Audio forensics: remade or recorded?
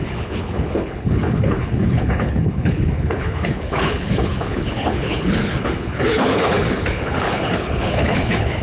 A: remade